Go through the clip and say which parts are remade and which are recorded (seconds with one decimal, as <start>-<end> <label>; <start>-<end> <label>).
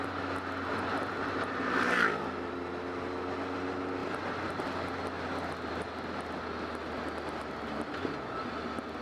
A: 0.0-9.0 recorded